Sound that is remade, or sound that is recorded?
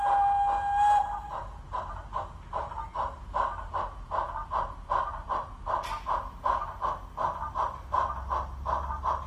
recorded